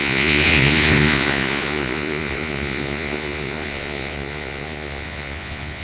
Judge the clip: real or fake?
fake